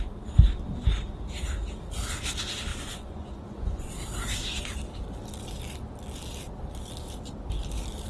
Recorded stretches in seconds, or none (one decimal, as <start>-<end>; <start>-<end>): 0.0-2.7; 3.9-8.1